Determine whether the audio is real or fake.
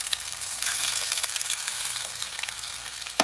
fake